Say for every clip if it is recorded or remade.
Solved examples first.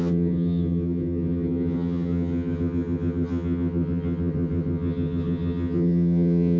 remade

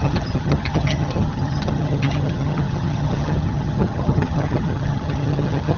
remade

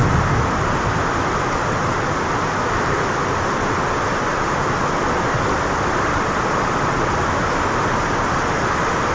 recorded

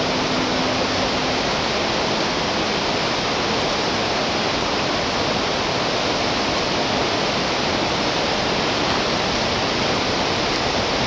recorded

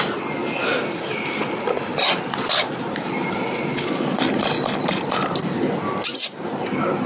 recorded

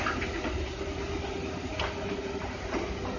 recorded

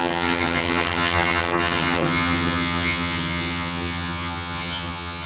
remade